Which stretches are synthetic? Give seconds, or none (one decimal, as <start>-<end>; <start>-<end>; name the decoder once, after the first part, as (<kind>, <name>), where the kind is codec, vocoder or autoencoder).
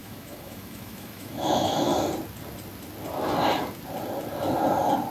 0.0-1.9 (autoencoder, DAC-VAE)